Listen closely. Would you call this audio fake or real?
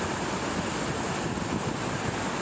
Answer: real